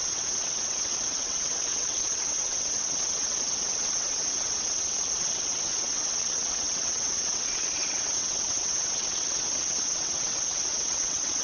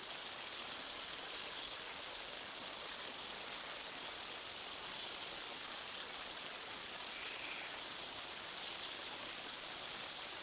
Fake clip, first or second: first